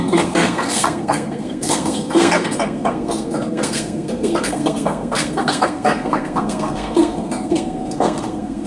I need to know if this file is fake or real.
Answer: fake